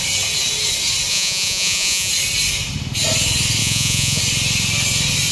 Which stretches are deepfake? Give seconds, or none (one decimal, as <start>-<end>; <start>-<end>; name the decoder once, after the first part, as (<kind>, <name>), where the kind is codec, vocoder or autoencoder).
1.1-2.1 (vocoder, Vocos); 3.6-4.2